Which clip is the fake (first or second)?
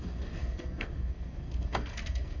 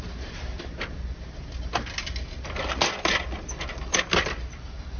first